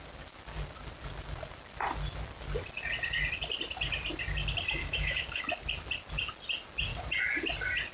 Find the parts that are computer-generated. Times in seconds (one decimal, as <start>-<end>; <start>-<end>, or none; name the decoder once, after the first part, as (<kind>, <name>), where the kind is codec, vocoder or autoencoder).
4.8-5.4 (autoencoder, DAC-VAE)